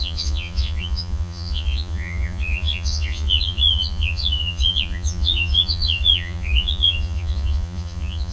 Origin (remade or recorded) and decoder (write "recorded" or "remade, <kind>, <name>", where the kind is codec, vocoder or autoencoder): remade, vocoder, Vocos